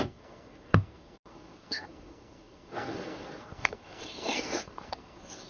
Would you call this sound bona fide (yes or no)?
no